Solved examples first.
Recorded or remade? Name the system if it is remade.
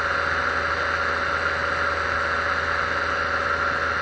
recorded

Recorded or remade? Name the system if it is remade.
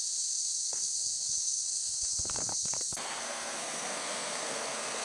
remade, codec, SNAC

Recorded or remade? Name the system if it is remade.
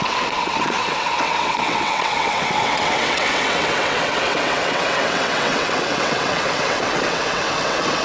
remade, vocoder, WaveNeXt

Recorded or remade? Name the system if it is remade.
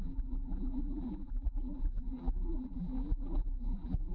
remade, vocoder, BigVGAN v2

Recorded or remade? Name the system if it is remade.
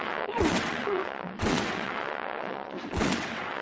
remade, vocoder, WaveNeXt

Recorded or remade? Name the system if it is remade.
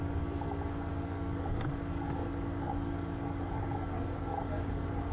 remade, codec, DAC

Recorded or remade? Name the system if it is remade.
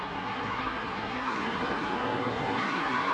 remade, codec, SNAC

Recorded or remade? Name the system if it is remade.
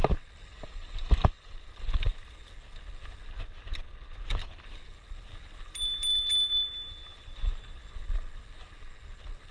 recorded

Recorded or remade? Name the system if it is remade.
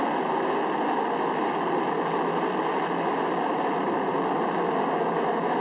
recorded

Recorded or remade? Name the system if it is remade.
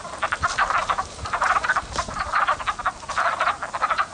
recorded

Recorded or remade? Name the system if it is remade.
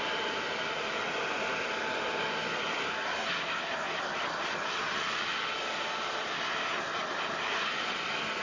recorded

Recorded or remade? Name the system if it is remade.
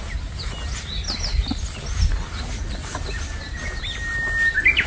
recorded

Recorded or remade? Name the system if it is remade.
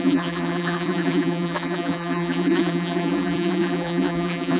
remade, vocoder, BigVGAN v2